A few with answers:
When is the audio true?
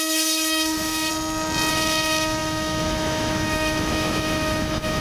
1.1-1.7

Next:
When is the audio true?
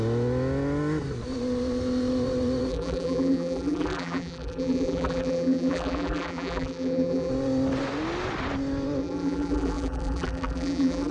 0.0-2.7; 7.3-9.0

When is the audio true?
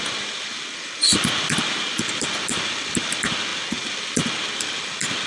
0.0-5.3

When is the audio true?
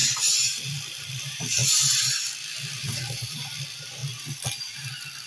0.0-0.6; 4.0-4.8